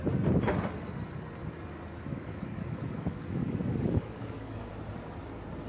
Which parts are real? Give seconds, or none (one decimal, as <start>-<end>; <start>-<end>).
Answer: 0.0-2.1; 4.7-5.7